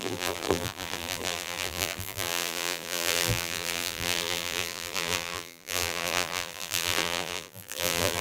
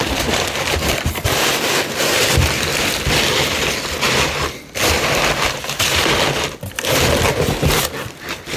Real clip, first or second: second